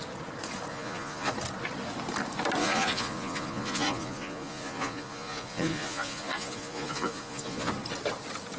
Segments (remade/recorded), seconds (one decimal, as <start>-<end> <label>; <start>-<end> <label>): 0.0-0.7 recorded; 0.7-1.3 remade; 1.3-2.6 recorded; 2.6-7.7 remade; 7.7-8.6 recorded